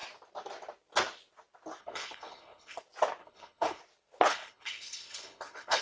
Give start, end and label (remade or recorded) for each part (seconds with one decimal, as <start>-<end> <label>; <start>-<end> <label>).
0.0-1.8 recorded; 1.8-2.8 remade; 2.8-3.2 recorded; 3.2-3.8 remade; 3.8-4.3 recorded; 4.3-5.8 remade